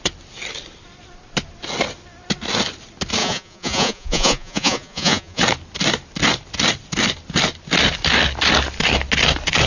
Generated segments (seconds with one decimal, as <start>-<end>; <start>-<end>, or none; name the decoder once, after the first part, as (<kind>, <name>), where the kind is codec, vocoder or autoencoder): 3.2-5.4 (vocoder, Vocos)